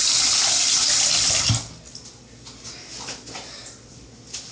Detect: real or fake real